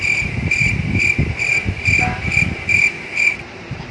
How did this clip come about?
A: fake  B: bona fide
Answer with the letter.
B